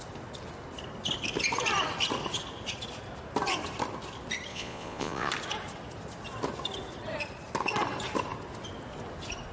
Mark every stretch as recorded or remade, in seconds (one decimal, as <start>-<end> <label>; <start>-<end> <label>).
0.0-4.5 recorded; 4.5-5.3 remade; 5.3-9.5 recorded